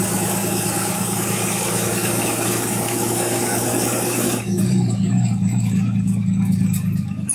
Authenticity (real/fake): fake